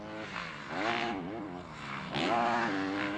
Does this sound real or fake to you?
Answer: real